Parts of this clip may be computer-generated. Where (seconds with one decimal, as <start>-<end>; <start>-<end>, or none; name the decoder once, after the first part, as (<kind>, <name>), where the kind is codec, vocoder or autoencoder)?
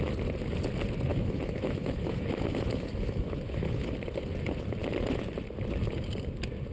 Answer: 1.1-3.9 (autoencoder, DAC-VAE)